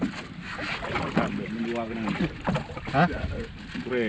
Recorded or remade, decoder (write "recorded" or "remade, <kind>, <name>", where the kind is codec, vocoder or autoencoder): recorded